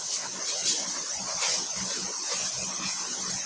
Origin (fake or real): real